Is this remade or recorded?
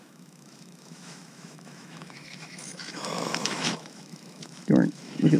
remade